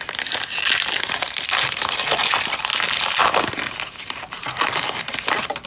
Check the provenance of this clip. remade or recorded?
recorded